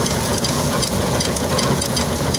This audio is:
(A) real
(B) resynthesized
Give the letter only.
B